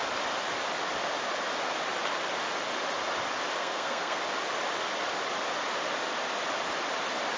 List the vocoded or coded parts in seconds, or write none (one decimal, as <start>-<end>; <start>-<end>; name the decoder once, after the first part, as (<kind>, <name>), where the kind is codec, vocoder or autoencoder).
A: 3.6-4.2 (codec, SNAC)